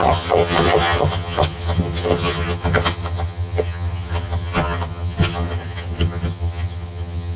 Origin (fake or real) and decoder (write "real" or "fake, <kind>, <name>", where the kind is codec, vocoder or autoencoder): fake, vocoder, HiFi-GAN